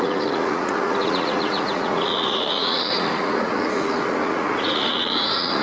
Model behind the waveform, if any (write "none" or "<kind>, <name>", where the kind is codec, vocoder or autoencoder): vocoder, Vocos